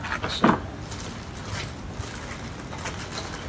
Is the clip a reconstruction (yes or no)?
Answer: no